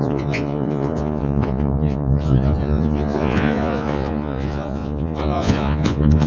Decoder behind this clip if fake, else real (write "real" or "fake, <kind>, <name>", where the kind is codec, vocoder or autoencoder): fake, vocoder, Vocos